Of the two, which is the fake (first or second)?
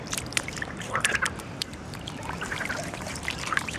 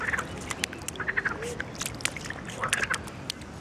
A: first